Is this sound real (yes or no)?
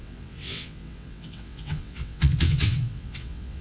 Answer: no